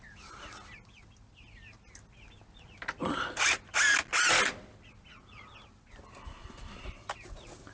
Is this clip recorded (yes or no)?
yes